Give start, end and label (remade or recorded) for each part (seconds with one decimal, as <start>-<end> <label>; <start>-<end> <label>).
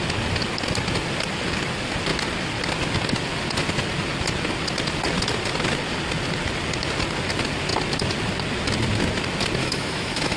0.0-9.6 recorded; 9.6-10.4 remade